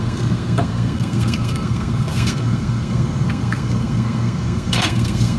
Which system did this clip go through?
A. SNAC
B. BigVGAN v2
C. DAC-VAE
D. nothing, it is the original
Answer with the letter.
A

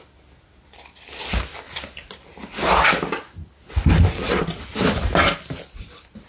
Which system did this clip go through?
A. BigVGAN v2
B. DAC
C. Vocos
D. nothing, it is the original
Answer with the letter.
D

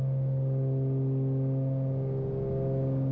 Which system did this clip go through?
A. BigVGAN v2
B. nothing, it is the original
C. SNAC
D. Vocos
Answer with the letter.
B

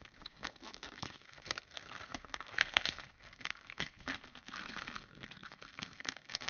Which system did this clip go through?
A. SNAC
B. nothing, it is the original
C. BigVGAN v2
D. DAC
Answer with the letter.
A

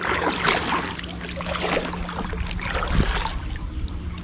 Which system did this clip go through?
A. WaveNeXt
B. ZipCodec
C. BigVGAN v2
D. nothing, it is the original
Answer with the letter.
D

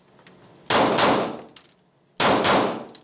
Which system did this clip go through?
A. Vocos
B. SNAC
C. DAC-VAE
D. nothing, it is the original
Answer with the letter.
D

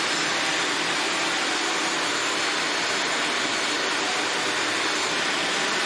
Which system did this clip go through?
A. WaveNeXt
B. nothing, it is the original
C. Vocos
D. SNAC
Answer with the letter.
B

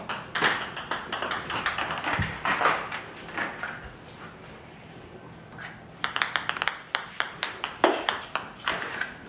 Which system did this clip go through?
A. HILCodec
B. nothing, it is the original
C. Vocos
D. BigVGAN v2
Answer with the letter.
B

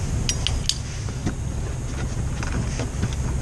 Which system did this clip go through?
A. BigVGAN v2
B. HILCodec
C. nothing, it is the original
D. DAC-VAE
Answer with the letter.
C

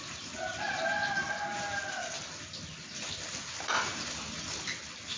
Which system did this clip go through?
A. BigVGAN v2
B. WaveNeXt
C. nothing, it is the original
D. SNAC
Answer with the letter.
C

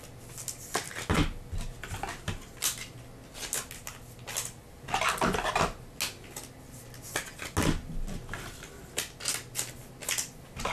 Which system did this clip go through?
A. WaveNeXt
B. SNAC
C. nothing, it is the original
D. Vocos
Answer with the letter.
C